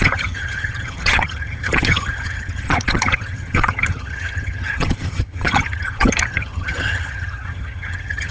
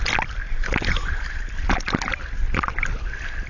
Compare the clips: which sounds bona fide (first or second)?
second